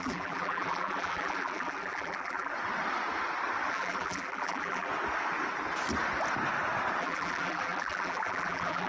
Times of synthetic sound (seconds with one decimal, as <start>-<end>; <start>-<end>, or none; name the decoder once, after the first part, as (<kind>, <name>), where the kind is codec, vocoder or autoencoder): 0.0-2.5 (vocoder, BigVGAN v2); 3.7-4.9; 7.0-8.9